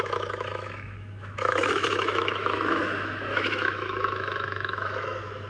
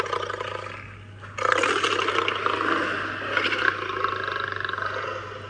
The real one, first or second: second